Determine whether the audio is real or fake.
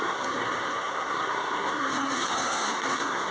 fake